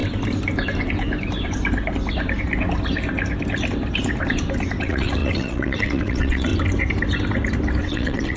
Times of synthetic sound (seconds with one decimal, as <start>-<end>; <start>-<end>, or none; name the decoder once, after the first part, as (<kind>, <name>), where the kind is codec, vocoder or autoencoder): 4.8-6.5 (vocoder, WaveNeXt); 7.8-8.4

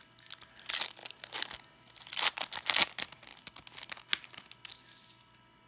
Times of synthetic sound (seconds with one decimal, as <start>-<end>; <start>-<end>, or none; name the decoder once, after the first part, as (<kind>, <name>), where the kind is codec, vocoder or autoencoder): none

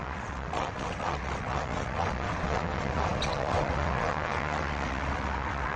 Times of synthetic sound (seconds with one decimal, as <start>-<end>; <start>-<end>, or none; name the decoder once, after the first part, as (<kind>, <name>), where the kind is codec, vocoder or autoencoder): 0.0-5.8 (vocoder, WaveNeXt)

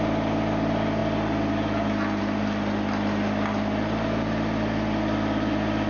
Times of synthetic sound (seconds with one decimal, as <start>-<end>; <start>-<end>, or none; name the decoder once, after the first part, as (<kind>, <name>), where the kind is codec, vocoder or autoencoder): none

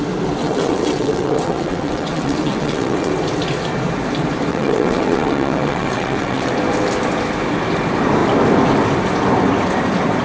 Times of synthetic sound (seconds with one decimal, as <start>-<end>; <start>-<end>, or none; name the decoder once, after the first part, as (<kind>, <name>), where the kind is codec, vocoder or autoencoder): 0.4-3.1 (vocoder, WaveNeXt); 4.5-6.5

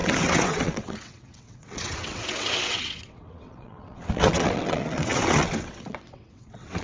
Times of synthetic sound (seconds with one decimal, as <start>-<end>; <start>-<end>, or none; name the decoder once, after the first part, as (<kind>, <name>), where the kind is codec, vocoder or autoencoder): 0.0-6.8 (vocoder, WaveNeXt)

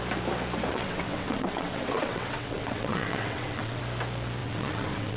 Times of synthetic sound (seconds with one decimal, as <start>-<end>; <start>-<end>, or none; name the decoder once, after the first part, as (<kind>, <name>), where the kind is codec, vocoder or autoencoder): 0.7-3.8 (vocoder, WaveNeXt); 4.4-5.2

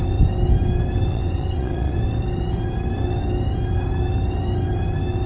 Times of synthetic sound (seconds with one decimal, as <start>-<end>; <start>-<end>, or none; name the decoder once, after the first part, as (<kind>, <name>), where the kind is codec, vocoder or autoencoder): 1.1-2.0 (vocoder, WaveNeXt)